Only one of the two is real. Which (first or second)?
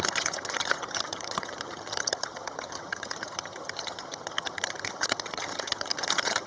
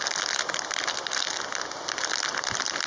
second